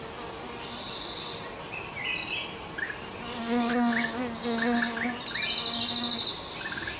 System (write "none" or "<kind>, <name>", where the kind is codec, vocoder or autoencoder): none